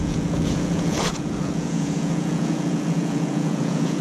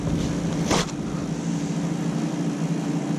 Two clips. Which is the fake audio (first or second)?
first